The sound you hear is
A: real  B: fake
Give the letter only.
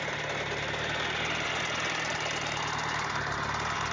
A